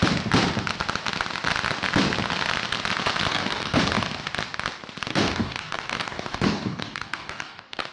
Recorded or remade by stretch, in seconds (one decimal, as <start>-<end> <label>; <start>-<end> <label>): 0.0-3.3 recorded; 3.3-3.8 remade; 3.8-5.1 recorded; 5.1-7.9 remade